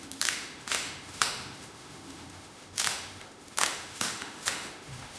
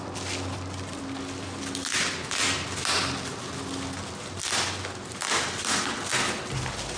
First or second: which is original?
second